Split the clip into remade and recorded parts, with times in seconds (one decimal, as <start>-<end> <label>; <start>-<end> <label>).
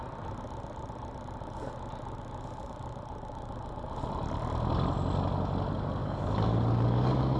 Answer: 0.0-6.0 recorded; 6.0-7.4 remade